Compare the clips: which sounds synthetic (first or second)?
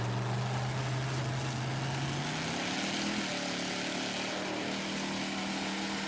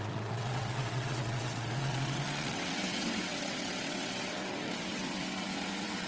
second